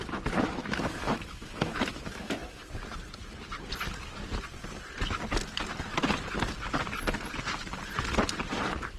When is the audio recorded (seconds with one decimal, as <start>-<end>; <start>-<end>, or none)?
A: 0.0-0.6; 2.7-9.0